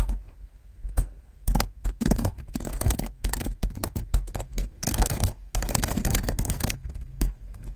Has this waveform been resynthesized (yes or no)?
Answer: yes